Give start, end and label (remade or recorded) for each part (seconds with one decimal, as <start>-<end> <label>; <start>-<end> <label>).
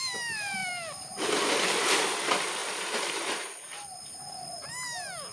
0.0-5.3 recorded